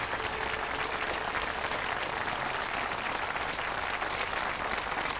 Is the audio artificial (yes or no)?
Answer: no